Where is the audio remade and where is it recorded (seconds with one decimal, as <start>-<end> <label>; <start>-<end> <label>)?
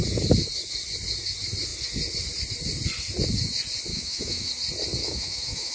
0.0-3.9 recorded; 3.9-4.5 remade; 4.5-5.0 recorded; 5.0-5.7 remade